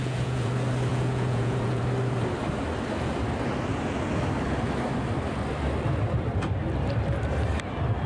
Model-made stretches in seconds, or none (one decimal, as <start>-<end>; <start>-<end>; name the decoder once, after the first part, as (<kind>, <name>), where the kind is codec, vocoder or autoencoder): 0.0-0.5 (vocoder, Vocos); 0.9-1.8